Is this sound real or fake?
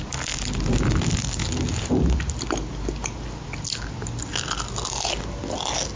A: real